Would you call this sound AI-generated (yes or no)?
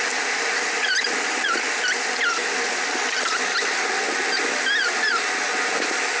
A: no